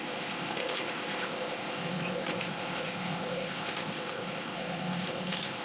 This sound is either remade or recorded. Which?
remade